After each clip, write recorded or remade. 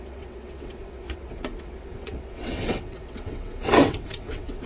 remade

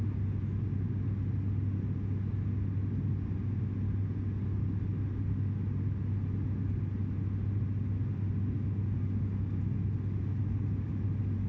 recorded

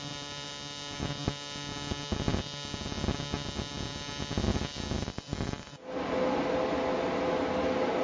recorded